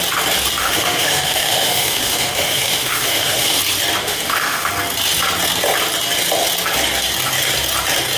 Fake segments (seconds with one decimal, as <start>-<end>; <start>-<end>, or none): 0.6-3.6; 4.0-4.7